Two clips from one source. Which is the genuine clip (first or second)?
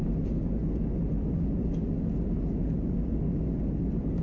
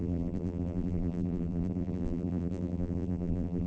first